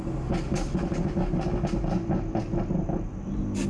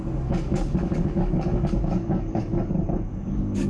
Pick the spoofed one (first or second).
second